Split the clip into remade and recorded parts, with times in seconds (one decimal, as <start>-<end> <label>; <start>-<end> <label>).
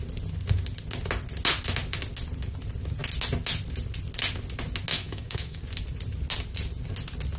0.0-4.9 recorded; 4.9-5.6 remade; 5.6-7.4 recorded